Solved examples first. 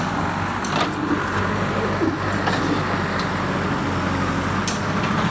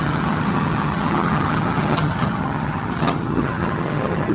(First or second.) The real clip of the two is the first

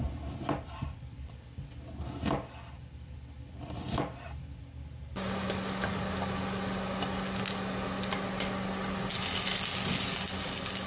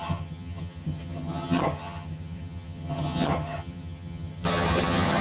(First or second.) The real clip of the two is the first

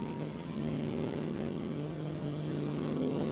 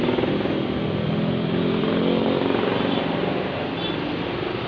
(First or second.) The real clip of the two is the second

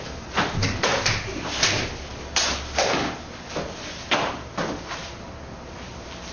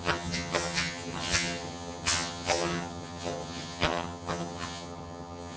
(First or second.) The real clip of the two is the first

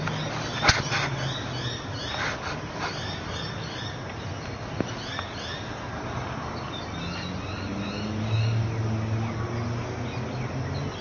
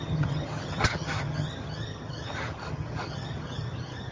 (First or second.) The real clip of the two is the first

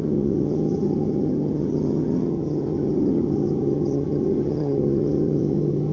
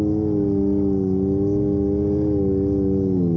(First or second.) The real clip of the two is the second